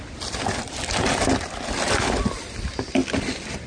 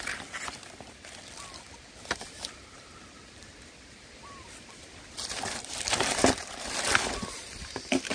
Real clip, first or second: first